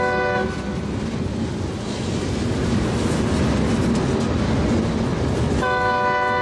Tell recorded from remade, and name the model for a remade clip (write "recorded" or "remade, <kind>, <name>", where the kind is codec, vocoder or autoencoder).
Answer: recorded